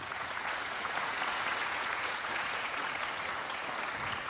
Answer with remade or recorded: remade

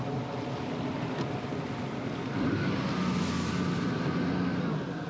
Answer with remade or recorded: recorded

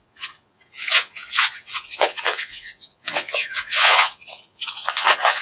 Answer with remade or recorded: remade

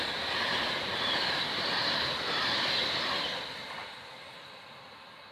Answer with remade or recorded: recorded